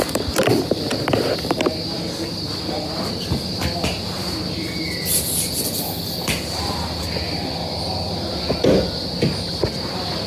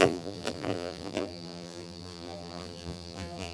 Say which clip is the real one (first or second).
first